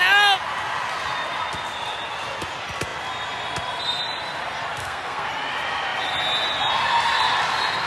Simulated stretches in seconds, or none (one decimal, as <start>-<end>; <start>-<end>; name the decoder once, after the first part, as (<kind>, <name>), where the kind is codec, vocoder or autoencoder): 4.8-5.3 (codec, SNAC)